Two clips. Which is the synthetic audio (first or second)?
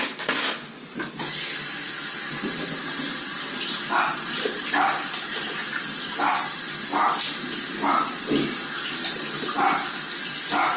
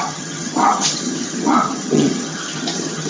second